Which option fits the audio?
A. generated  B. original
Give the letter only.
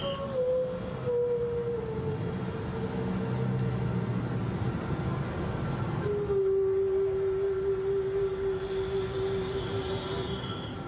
B